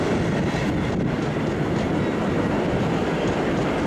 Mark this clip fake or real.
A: real